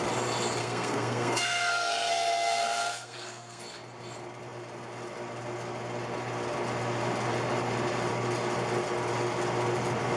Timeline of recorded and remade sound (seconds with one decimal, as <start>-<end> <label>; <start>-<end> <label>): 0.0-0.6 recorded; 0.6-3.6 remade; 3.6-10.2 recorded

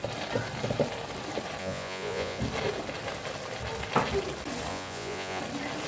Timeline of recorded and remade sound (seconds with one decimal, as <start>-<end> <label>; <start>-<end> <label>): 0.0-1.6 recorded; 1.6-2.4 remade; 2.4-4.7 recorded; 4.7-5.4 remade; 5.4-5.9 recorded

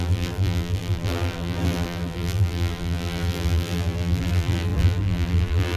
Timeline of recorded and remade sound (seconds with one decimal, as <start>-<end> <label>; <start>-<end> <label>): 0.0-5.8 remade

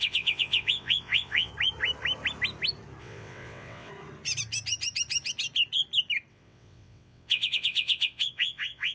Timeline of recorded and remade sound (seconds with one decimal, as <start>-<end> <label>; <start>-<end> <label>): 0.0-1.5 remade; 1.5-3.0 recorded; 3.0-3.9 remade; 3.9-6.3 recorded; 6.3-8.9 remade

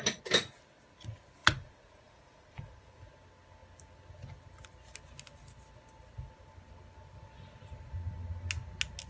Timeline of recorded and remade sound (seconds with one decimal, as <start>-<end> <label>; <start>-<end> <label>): 0.0-1.4 recorded; 1.4-3.0 remade; 3.0-9.1 recorded

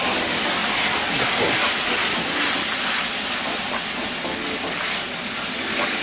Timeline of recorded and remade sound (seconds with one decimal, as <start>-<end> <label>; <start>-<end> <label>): 0.0-0.6 recorded; 0.6-1.5 remade; 1.5-2.0 recorded; 2.0-5.6 remade; 5.6-6.0 recorded

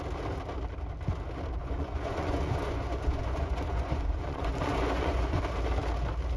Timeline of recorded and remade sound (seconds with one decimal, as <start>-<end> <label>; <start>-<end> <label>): 0.0-1.6 recorded; 1.6-5.4 remade; 5.4-6.4 recorded